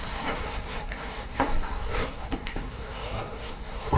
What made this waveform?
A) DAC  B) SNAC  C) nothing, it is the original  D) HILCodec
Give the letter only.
B